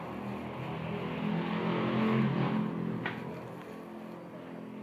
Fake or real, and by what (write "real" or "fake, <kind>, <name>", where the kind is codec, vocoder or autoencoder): real